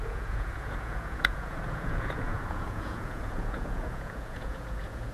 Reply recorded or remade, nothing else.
remade